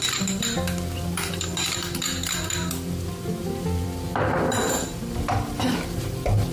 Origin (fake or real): fake